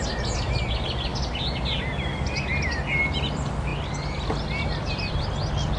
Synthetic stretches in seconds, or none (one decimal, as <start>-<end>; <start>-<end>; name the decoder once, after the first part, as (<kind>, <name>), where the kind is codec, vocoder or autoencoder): 1.1-1.8 (vocoder, BigVGAN v2); 3.7-5.1